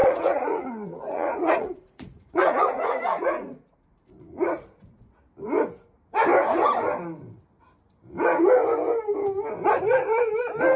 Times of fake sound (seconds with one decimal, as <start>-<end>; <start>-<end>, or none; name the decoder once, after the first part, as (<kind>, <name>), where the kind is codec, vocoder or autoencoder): 0.0-5.1 (vocoder, Vocos)